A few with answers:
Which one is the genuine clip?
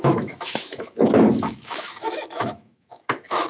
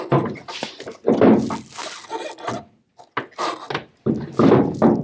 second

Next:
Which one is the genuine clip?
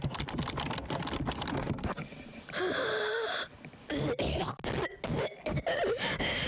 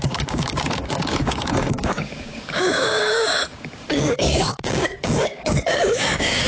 first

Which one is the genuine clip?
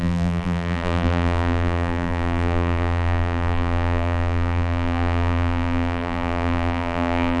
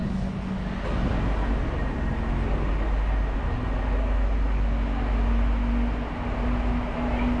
second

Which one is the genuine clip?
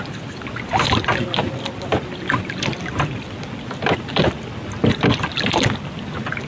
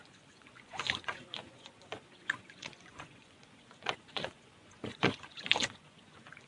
first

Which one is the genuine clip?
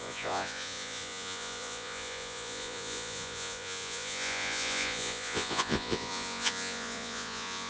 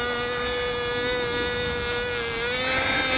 second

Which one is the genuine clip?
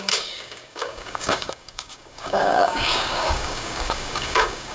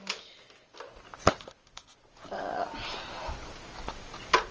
second